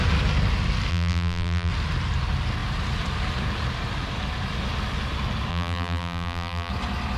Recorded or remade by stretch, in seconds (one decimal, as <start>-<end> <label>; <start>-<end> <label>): 0.0-0.9 recorded; 0.9-1.7 remade; 1.7-5.5 recorded; 5.5-6.7 remade; 6.7-7.2 recorded